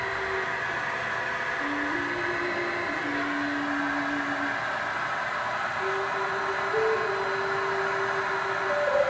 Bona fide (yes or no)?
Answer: yes